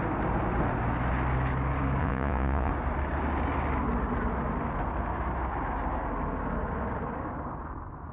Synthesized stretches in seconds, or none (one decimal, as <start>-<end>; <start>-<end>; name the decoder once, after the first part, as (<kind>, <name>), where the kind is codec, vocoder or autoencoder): 2.0-2.7 (vocoder, Vocos)